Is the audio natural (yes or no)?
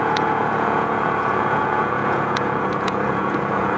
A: no